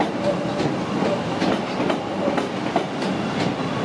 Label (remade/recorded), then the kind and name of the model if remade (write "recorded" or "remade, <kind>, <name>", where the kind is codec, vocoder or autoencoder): recorded